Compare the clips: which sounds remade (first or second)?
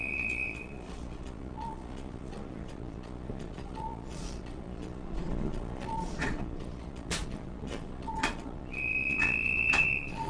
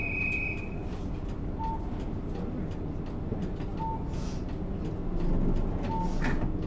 first